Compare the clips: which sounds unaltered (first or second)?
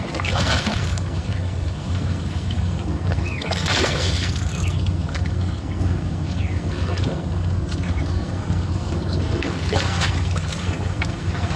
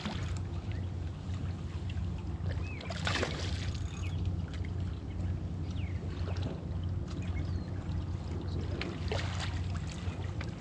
second